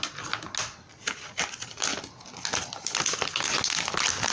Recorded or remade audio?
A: recorded